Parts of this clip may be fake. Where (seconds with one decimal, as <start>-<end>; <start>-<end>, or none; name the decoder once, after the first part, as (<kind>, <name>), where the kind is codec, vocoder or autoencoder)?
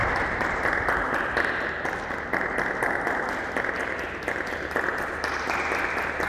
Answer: none